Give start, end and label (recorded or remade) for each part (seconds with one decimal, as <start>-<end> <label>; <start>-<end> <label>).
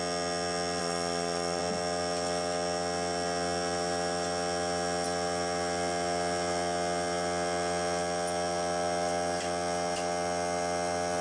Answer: 0.0-0.8 recorded; 0.8-1.6 remade; 1.6-11.2 recorded